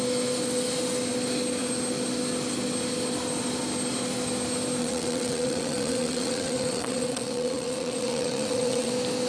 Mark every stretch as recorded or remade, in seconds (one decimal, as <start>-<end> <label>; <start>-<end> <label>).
0.0-4.8 recorded; 4.8-8.9 remade; 8.9-9.3 recorded